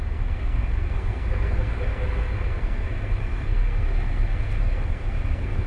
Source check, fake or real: fake